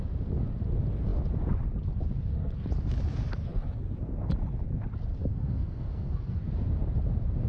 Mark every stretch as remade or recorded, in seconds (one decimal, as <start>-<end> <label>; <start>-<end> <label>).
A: 0.0-5.2 recorded; 5.2-6.4 remade; 6.4-7.5 recorded